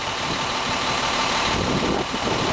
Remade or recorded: recorded